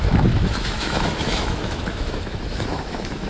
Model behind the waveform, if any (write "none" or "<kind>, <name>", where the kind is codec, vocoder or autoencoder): autoencoder, DAC-VAE